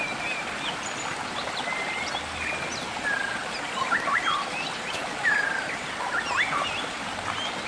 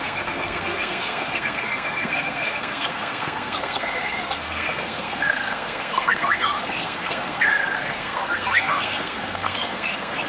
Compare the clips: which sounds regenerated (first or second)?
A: second